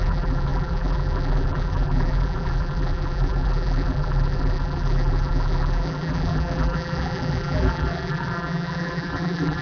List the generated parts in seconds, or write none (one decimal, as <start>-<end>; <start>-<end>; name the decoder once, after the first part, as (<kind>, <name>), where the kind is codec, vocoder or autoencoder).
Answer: 0.0-9.6 (vocoder, BigVGAN v2)